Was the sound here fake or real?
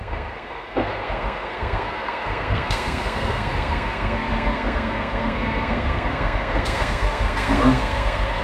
fake